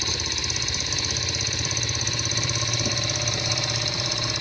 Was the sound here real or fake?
fake